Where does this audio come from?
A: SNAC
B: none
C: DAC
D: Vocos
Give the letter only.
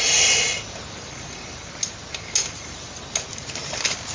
B